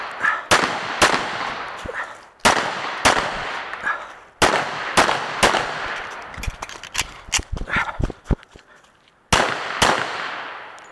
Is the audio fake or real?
real